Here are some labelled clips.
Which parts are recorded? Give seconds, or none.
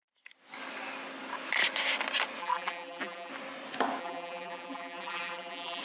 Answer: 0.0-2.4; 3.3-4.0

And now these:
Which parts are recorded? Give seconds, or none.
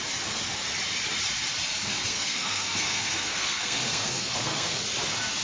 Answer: 0.0-2.1; 4.8-5.4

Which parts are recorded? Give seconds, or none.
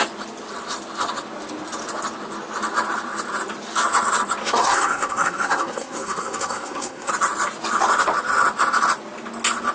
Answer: 0.0-4.4; 7.1-9.7